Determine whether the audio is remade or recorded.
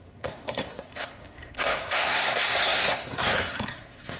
remade